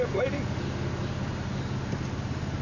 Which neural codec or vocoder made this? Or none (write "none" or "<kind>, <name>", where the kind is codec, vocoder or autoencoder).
none